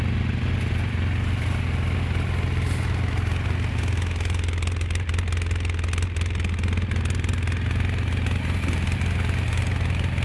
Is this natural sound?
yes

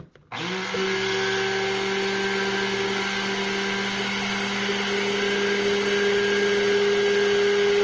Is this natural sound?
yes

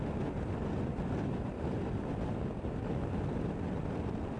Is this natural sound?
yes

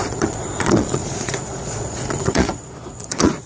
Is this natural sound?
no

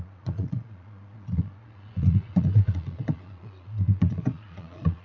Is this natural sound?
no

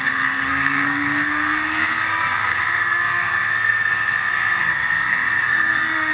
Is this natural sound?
no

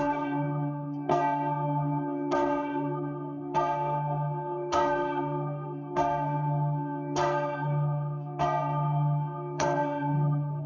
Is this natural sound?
no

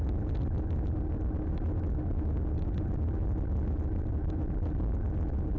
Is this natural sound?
yes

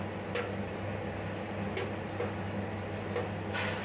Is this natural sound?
yes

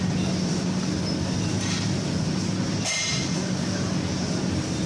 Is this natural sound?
yes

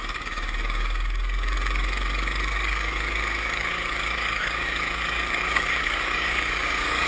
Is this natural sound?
no